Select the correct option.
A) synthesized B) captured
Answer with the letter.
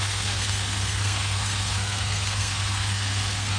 A